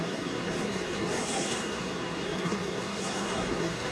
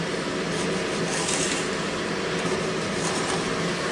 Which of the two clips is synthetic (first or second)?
first